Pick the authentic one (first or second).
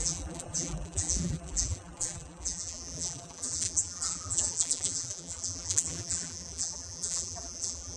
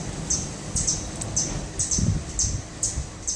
second